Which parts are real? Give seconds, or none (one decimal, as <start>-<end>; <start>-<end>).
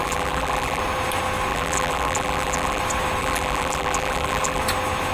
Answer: 0.8-1.5; 2.8-3.2; 4.6-5.1